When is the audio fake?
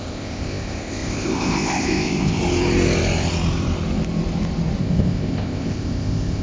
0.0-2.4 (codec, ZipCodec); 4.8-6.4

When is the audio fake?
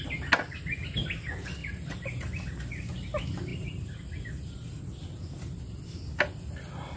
none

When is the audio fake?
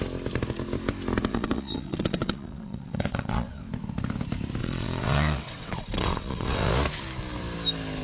1.3-3.6 (vocoder, WaveNeXt); 4.6-6.7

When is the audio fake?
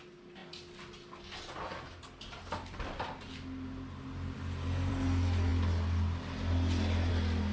none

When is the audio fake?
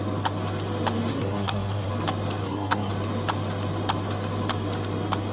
1.1-1.9 (codec, SNAC); 2.4-2.9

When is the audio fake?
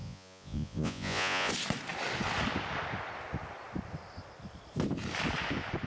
0.0-1.5 (vocoder, Vocos)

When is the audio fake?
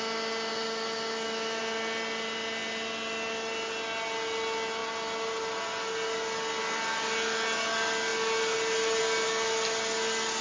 0.5-1.6 (autoencoder, DAC-VAE)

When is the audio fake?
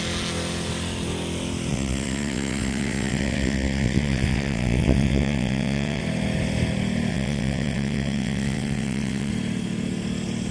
1.7-6.0 (vocoder, WaveNeXt); 7.1-9.3